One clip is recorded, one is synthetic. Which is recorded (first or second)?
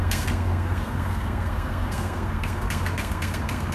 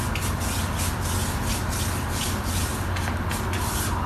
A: second